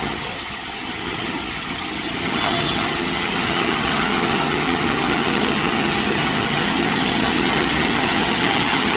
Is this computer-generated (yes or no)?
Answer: yes